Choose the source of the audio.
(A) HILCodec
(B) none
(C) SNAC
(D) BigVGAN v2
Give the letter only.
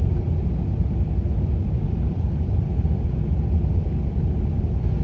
B